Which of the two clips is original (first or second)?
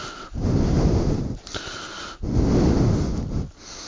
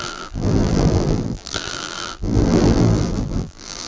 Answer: first